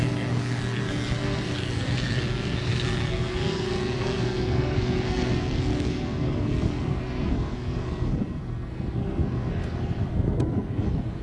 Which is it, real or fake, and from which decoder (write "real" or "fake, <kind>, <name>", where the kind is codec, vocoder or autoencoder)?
fake, codec, SNAC